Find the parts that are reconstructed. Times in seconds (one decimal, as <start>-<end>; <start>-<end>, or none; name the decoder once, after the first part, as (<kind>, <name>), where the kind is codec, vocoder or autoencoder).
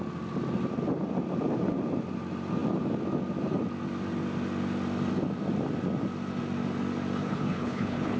7.2-8.2 (codec, HILCodec)